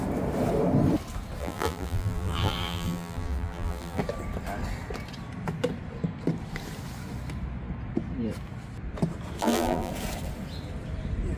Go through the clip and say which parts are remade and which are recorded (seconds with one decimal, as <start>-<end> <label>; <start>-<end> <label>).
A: 0.0-1.4 recorded; 1.4-4.0 remade; 4.0-9.4 recorded; 9.4-9.9 remade; 9.9-11.4 recorded